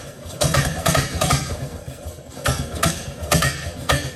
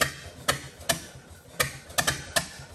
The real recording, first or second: second